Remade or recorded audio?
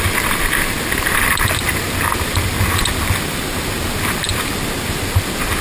recorded